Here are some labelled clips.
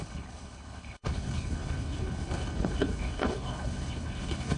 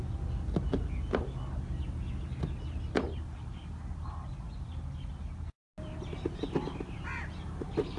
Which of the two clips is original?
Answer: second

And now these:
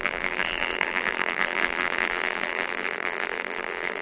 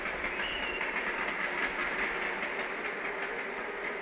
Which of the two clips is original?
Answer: second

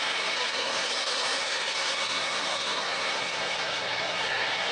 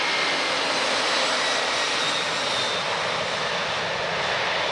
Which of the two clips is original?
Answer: second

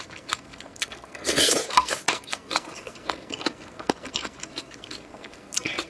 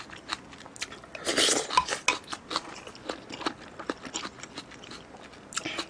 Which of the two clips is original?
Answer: second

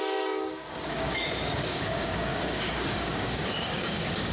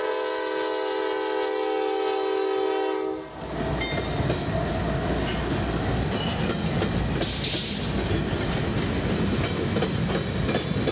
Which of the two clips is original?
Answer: second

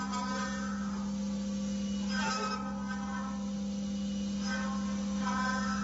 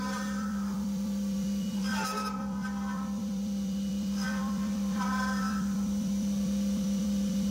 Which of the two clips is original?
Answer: first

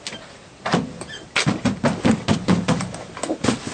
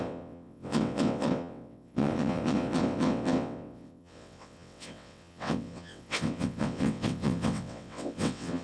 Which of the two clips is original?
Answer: first